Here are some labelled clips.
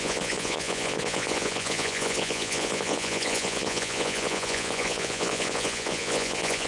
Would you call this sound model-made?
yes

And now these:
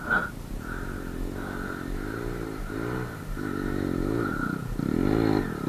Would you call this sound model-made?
no